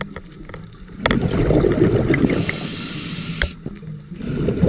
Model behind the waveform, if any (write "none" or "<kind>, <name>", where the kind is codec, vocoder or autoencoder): none